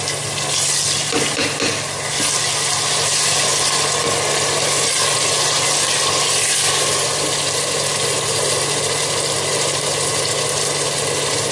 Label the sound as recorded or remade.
recorded